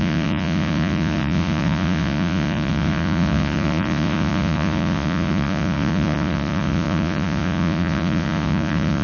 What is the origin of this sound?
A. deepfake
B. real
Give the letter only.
A